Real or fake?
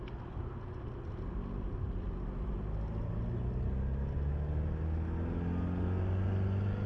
real